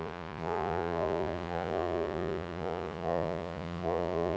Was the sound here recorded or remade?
remade